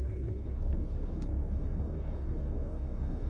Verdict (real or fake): fake